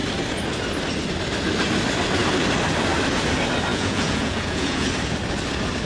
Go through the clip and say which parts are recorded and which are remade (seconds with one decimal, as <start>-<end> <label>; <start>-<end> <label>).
0.0-3.7 recorded; 3.7-4.9 remade; 4.9-5.9 recorded